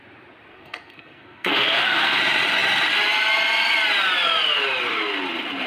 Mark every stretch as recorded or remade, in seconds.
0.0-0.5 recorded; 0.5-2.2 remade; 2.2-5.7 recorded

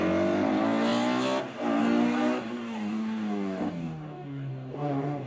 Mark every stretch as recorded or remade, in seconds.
0.0-1.8 recorded; 1.8-5.3 remade

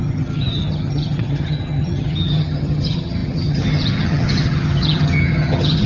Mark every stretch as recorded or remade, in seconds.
0.0-5.9 remade

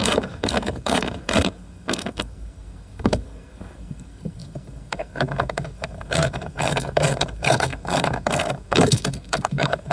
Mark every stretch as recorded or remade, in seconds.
0.0-9.9 remade